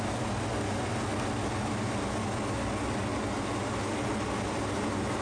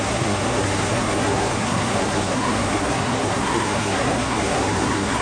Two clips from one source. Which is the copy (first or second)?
second